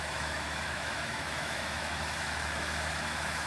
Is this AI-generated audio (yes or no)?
yes